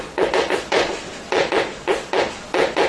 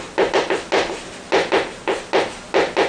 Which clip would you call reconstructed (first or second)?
first